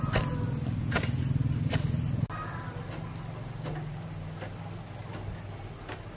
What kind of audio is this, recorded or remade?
recorded